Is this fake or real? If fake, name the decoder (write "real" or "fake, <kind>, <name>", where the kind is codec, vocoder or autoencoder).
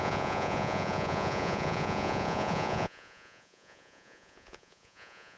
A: fake, vocoder, Vocos